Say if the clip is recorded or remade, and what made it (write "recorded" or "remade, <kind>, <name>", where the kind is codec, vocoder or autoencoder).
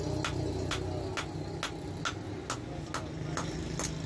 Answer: recorded